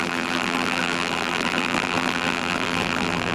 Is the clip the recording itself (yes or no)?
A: no